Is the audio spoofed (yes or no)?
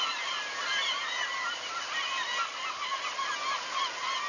no